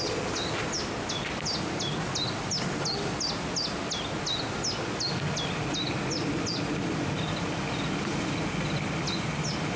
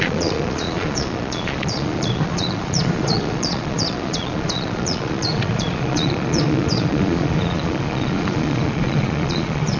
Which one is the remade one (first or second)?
second